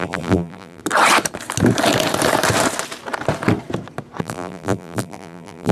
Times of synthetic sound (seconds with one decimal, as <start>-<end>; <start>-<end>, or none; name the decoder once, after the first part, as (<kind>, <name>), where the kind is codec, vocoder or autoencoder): 0.0-0.8 (vocoder, BigVGAN v2); 4.2-5.7